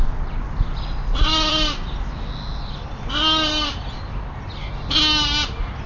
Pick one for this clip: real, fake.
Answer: real